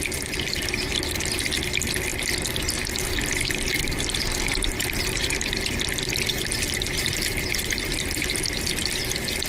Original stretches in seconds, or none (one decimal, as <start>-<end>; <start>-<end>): 0.0-9.5